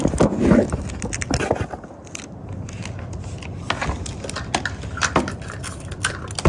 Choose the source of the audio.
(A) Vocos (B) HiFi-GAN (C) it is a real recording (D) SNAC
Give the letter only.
C